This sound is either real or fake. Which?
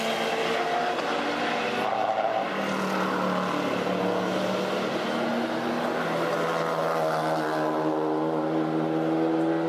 real